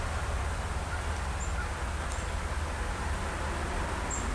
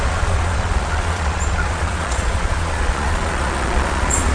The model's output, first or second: second